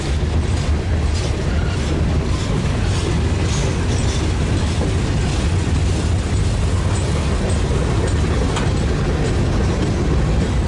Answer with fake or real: real